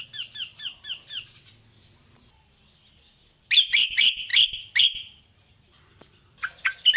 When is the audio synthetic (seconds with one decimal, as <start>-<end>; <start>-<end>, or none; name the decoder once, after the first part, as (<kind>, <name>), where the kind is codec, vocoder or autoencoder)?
0.0-0.5 (vocoder, BigVGAN v2); 3.9-7.0